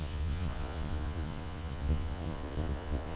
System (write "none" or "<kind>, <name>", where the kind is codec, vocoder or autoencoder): vocoder, Vocos